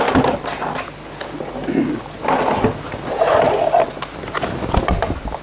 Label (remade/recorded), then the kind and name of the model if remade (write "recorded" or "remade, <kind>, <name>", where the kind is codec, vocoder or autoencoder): recorded